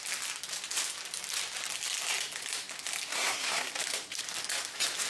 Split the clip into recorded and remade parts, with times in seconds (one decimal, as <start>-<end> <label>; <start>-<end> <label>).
0.0-3.1 recorded; 3.1-3.7 remade; 3.7-5.1 recorded